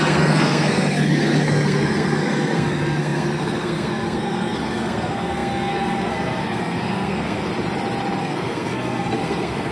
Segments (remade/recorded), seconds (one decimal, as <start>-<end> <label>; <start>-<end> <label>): 0.0-7.5 remade; 7.5-8.2 recorded; 8.2-9.7 remade